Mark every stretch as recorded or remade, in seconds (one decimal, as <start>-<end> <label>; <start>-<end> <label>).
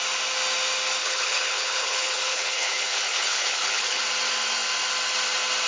0.0-1.0 recorded; 1.0-4.0 remade; 4.0-5.7 recorded